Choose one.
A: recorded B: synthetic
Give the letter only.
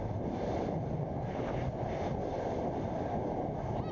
A